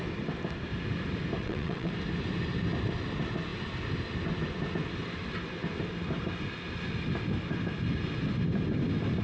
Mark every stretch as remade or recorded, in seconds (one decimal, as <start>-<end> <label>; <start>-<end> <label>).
0.0-1.4 recorded; 1.4-1.9 remade; 1.9-9.2 recorded